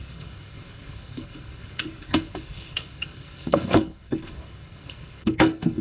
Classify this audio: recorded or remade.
remade